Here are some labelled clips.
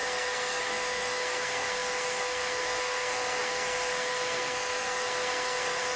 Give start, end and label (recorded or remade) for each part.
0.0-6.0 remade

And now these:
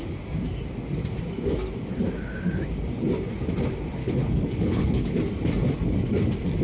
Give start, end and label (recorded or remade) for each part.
0.0-4.0 recorded; 4.0-5.2 remade; 5.2-6.6 recorded

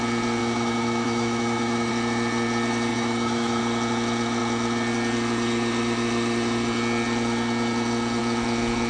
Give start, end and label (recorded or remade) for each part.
0.0-0.4 recorded; 0.4-1.9 remade; 1.9-2.9 recorded; 2.9-3.6 remade; 3.6-8.9 recorded

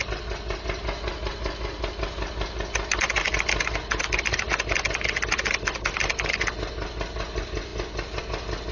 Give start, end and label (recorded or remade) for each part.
0.0-8.7 recorded

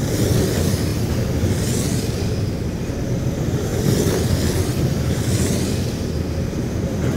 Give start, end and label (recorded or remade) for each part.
0.0-7.2 recorded

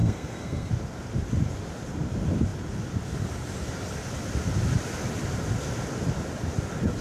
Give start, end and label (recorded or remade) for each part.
0.0-0.7 remade; 0.7-7.0 recorded

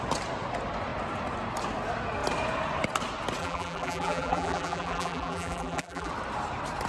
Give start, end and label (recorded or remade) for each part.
0.0-3.4 recorded; 3.4-6.1 remade; 6.1-6.9 recorded